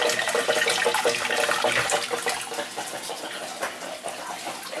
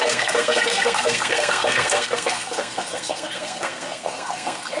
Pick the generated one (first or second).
second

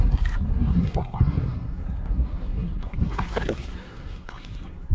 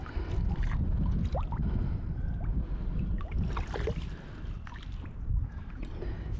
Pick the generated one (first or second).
first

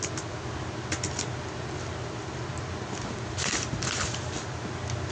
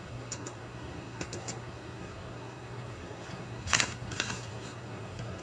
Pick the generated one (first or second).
second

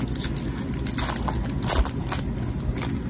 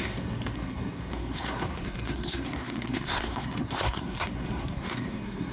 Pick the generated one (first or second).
second